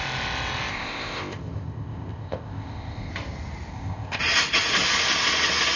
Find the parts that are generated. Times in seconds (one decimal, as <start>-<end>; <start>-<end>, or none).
0.7-3.1; 3.7-4.2